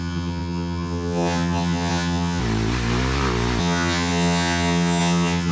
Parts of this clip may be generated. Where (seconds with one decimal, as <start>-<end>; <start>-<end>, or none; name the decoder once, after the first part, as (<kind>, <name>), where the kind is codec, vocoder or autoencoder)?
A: 0.0-2.4 (vocoder, HiFi-GAN); 3.6-5.5